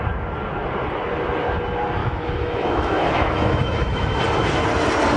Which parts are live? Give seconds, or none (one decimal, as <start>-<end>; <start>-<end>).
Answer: 0.0-2.0; 4.2-5.2